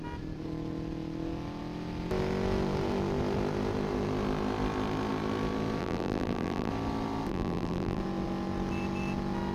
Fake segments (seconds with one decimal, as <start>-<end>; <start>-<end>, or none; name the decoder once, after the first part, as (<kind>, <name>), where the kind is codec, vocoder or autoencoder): 5.8-6.7 (vocoder, BigVGAN v2); 7.3-8.0